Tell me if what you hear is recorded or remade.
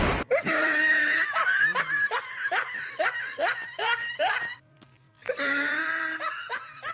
remade